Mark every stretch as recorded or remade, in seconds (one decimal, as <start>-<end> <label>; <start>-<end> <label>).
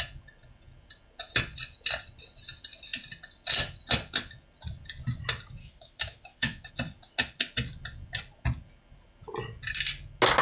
0.0-5.6 recorded; 5.6-6.7 remade; 6.7-10.4 recorded